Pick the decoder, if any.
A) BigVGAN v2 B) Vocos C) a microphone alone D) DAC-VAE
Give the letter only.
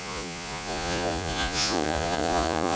B